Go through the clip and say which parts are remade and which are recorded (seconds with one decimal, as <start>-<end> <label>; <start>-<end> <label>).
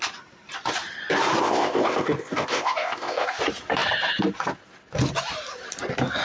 0.0-1.4 recorded; 1.4-3.4 remade; 3.4-6.2 recorded